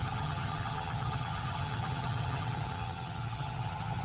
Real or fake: fake